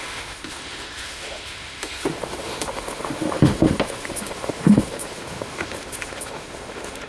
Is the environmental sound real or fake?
fake